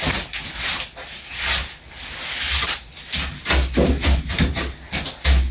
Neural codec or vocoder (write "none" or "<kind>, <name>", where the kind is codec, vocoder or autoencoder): none